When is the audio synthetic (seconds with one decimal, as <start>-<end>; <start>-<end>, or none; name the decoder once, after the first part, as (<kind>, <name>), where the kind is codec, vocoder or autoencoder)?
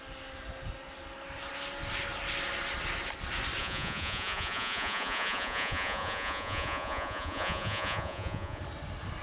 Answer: 3.6-8.6 (vocoder, Vocos)